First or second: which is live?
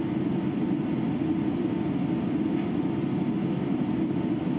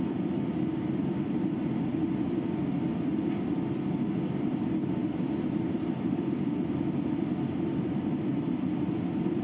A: first